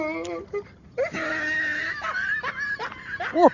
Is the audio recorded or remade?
recorded